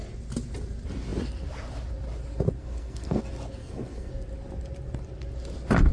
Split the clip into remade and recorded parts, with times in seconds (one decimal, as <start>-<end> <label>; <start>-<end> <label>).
0.0-2.6 recorded; 2.6-3.2 remade; 3.2-3.6 recorded; 3.6-4.1 remade; 4.1-5.9 recorded